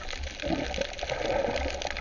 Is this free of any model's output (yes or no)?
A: yes